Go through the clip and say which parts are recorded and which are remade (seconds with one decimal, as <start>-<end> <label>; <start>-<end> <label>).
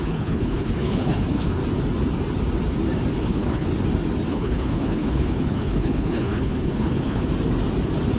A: 0.0-1.6 remade; 1.6-3.1 recorded; 3.1-3.7 remade; 3.7-4.3 recorded; 4.3-7.3 remade; 7.3-8.2 recorded